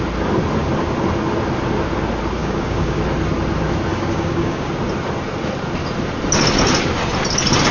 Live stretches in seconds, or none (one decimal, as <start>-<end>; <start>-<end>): 0.0-2.4; 3.0-3.9; 4.7-7.7